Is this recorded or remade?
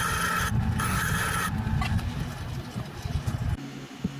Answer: recorded